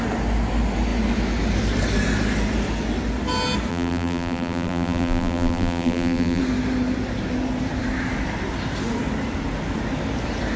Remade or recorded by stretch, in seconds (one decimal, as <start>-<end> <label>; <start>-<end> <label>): 0.0-3.7 recorded; 3.7-6.4 remade; 6.4-10.6 recorded